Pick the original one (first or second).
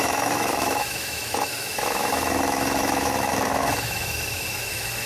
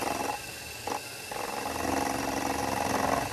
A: second